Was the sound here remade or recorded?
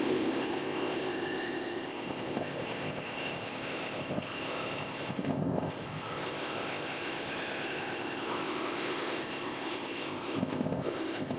remade